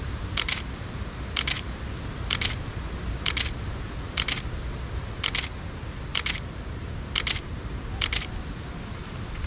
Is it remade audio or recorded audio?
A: recorded